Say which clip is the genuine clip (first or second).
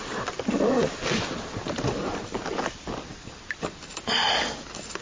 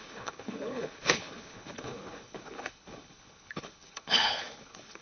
first